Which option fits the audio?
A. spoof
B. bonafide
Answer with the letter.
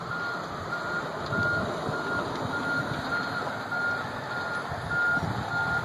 B